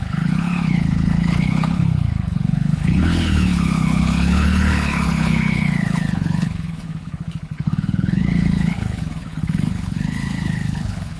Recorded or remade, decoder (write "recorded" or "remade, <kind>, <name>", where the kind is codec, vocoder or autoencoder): remade, codec, HILCodec